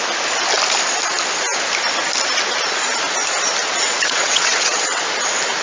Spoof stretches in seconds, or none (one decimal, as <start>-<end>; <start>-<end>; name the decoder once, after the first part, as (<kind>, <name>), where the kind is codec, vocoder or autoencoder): 3.6-5.0 (vocoder, WaveNeXt)